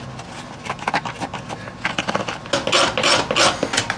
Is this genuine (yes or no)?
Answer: yes